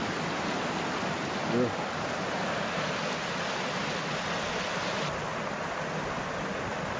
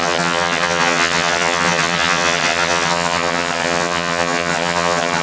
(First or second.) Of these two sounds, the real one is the first